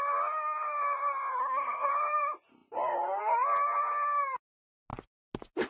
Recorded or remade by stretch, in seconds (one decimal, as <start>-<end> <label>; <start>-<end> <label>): 0.0-1.4 recorded; 1.4-1.9 remade; 1.9-5.7 recorded